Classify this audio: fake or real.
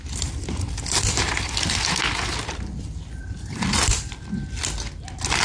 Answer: real